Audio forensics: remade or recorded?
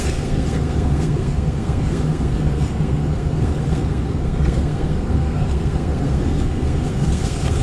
remade